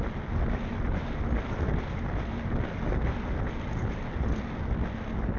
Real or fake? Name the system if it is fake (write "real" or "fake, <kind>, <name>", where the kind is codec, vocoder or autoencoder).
real